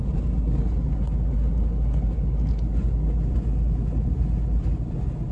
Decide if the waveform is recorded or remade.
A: recorded